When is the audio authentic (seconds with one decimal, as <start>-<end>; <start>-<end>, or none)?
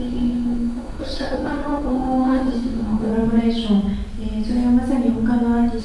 3.1-5.8